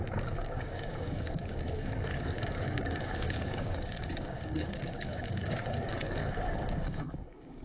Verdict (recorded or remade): remade